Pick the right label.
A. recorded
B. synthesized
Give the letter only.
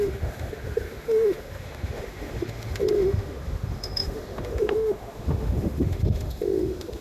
B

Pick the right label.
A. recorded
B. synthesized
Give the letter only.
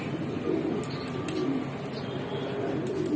A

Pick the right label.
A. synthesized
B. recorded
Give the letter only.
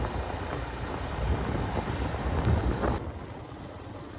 B